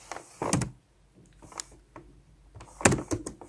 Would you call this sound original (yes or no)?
yes